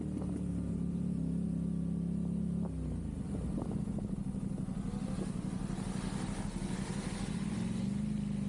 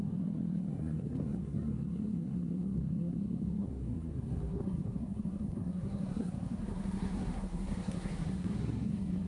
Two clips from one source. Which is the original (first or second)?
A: first